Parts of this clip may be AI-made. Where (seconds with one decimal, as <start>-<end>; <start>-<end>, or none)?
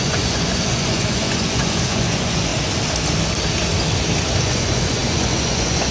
0.0-2.5; 4.4-5.9